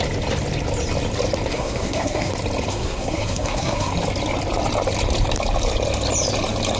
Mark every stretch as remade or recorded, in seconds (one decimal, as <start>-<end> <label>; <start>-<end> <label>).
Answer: 0.0-1.5 recorded; 1.5-2.3 remade; 2.3-2.7 recorded; 2.7-3.9 remade; 3.9-6.8 recorded